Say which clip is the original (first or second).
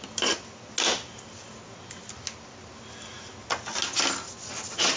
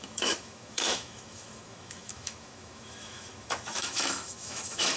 first